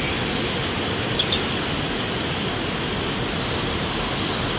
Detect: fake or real real